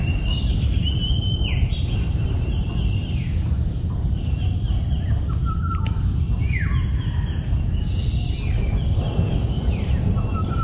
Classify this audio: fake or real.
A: real